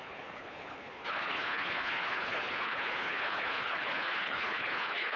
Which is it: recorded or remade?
remade